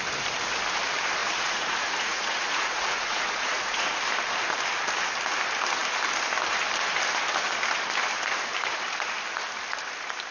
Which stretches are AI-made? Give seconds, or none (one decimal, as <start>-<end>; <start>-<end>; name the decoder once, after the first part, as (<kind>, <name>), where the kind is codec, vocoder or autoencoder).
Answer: 1.2-4.0 (vocoder, Vocos)